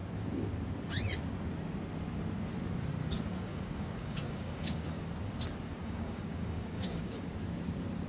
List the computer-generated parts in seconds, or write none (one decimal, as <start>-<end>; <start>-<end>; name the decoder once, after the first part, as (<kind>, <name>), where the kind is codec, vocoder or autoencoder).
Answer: 3.5-5.0 (codec, DAC); 5.8-7.3